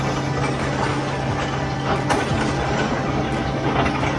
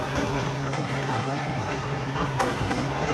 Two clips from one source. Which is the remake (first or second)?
second